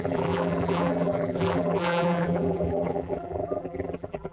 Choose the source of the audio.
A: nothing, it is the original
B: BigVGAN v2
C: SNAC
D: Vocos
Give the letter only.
B